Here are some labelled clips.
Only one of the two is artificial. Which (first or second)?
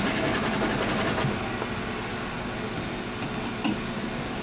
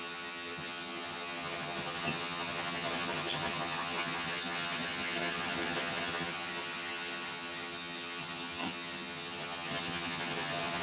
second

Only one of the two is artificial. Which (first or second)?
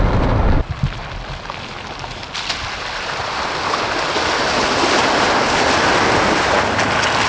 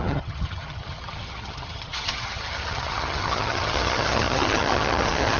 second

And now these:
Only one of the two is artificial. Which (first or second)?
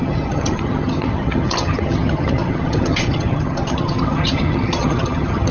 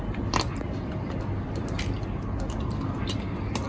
first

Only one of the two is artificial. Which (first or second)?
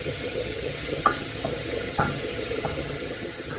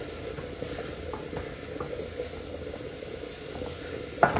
first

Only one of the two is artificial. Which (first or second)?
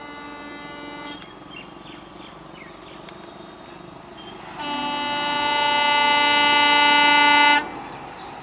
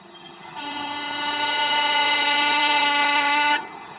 second